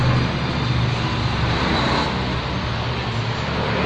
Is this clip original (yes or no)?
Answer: yes